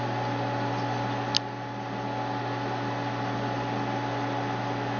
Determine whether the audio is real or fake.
real